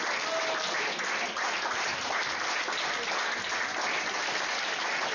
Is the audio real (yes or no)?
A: yes